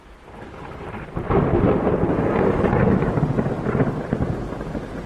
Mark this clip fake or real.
real